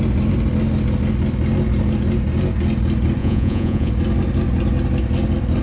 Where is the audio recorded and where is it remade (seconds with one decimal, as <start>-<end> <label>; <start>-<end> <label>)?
0.0-3.2 recorded; 3.2-3.9 remade; 3.9-5.6 recorded